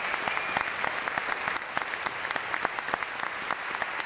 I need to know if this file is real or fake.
real